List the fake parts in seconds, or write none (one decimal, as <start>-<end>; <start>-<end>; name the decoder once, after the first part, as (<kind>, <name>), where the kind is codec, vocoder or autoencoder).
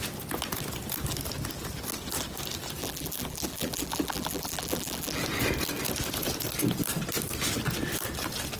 2.8-5.2 (vocoder, BigVGAN v2)